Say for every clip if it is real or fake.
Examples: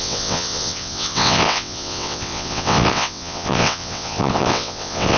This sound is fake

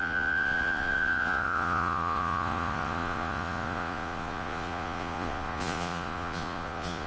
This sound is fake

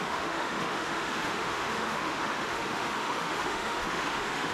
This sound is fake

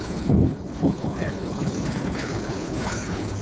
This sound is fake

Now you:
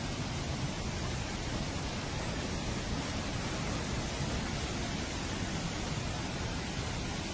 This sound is real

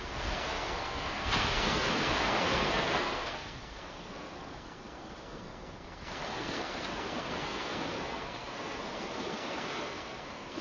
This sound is fake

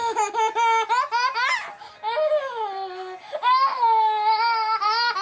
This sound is real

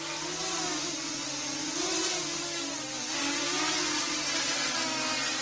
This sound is real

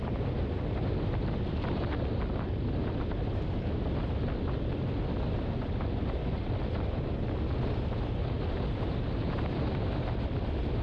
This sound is real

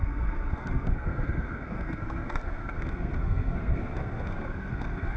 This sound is fake